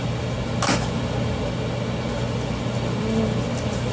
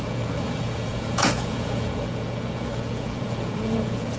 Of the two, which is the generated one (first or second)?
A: second